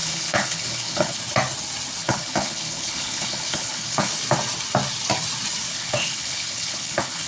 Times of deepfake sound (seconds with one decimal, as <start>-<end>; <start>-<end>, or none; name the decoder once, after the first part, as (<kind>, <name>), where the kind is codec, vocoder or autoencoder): 0.0-1.2 (codec, HILCodec); 2.0-4.1; 5.7-7.3